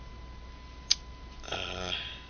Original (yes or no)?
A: yes